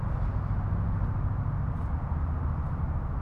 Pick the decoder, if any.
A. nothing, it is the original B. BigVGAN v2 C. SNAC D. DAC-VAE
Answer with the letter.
A